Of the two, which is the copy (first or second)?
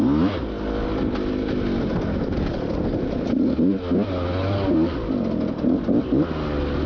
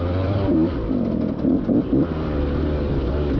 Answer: second